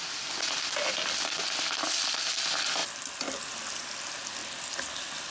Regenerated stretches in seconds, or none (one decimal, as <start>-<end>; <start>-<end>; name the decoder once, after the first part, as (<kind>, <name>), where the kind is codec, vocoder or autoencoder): none